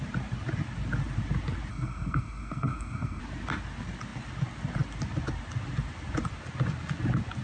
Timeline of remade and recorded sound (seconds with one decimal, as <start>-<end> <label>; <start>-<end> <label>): 0.0-1.7 recorded; 1.7-3.2 remade; 3.2-7.4 recorded